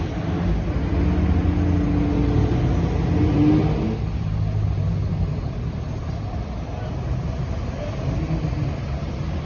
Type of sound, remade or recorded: recorded